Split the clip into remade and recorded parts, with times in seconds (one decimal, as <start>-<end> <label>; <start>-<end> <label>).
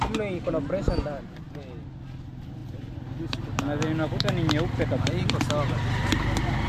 0.0-0.8 recorded; 0.8-1.6 remade; 1.6-6.7 recorded